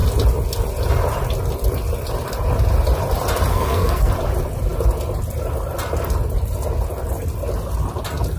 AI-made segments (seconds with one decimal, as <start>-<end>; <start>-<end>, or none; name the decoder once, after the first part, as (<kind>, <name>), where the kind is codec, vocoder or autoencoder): 3.5-4.1 (codec, SNAC)